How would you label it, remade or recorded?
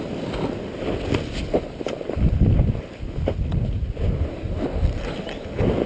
recorded